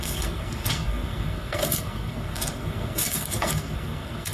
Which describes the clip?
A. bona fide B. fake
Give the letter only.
B